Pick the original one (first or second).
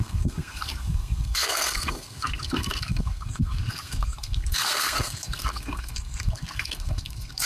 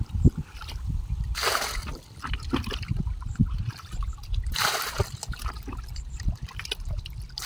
second